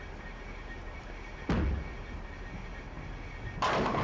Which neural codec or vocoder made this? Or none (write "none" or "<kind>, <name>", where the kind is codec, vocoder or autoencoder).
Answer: none